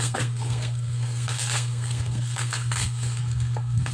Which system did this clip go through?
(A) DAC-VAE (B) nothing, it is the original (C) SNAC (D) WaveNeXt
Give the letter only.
C